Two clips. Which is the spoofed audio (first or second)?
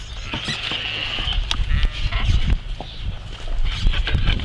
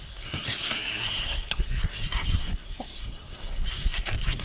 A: second